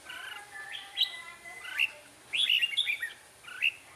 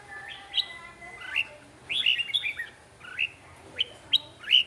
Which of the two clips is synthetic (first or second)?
first